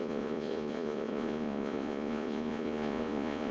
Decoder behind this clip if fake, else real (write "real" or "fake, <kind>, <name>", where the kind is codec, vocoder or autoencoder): fake, vocoder, Vocos